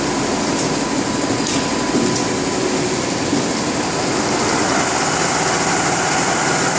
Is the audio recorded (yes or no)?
yes